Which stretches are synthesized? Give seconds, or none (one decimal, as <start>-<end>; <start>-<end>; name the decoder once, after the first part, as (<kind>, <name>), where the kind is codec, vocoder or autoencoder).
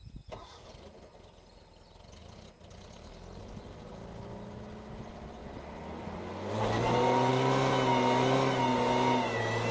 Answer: none